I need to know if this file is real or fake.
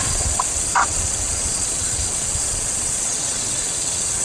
fake